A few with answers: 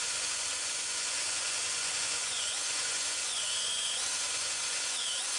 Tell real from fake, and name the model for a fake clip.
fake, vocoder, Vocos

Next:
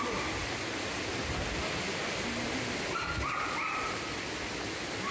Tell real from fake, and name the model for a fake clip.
real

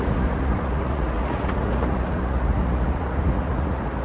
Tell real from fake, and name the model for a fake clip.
fake, vocoder, Vocos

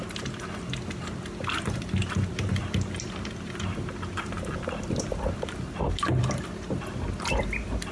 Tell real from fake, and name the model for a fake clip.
real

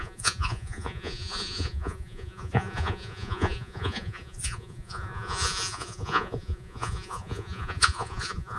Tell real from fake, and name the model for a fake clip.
fake, vocoder, Vocos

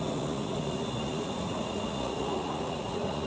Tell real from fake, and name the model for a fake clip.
fake, vocoder, Vocos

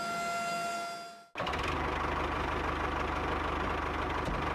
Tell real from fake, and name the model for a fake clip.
real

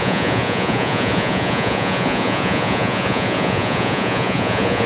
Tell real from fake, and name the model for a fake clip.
fake, vocoder, Vocos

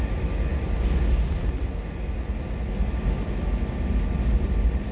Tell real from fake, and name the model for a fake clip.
real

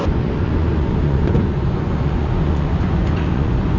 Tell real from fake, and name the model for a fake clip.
fake, vocoder, Vocos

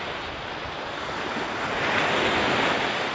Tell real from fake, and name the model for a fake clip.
real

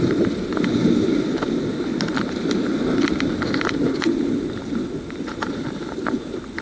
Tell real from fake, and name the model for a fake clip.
real